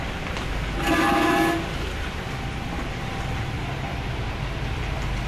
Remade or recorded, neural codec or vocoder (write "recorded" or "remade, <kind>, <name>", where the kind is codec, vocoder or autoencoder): recorded